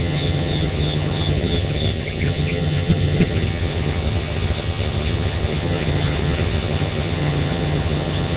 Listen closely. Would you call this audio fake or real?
fake